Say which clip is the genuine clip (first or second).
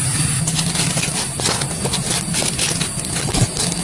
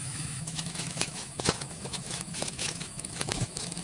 first